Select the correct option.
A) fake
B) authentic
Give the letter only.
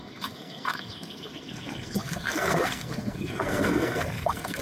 A